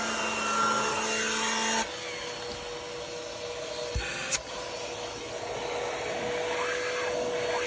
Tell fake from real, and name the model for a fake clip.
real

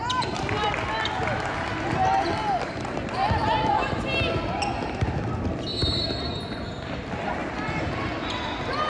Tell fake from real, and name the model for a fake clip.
real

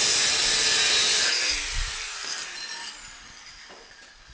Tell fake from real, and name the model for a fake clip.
real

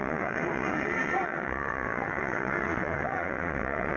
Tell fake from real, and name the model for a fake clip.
fake, vocoder, WaveNeXt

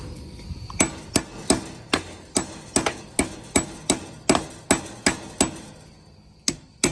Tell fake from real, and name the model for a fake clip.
real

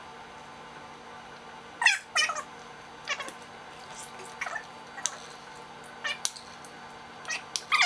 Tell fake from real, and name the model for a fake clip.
real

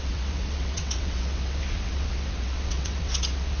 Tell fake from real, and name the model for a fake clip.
fake, vocoder, WaveNeXt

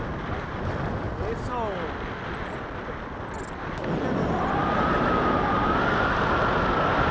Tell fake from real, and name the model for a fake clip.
real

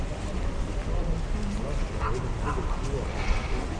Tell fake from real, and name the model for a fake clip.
real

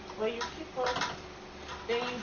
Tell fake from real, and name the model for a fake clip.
real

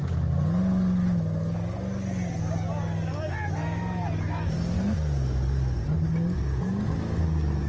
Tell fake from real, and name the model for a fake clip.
real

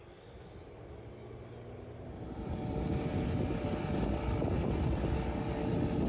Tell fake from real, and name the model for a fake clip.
real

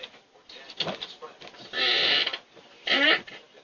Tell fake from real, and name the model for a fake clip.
real